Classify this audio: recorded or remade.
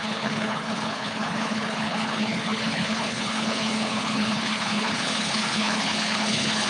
remade